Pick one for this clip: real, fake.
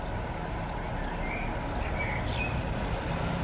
real